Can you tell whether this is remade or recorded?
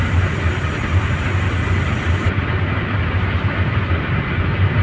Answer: recorded